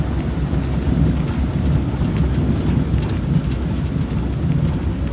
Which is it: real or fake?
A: real